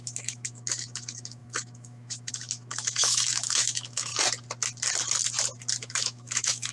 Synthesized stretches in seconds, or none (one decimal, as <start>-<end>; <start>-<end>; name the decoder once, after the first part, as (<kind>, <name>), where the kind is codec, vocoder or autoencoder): 0.0-4.1 (autoencoder, DAC-VAE); 5.8-6.7